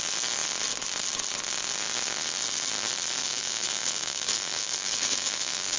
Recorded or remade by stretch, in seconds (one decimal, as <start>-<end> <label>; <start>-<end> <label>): 0.0-3.2 recorded; 3.2-5.8 remade

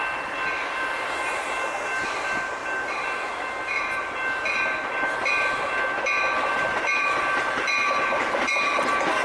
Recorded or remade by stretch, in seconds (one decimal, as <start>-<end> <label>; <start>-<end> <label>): 0.0-9.2 recorded

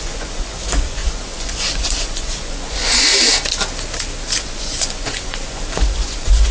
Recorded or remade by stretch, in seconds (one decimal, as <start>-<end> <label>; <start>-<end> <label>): 0.0-3.1 remade; 3.1-4.4 recorded; 4.4-6.5 remade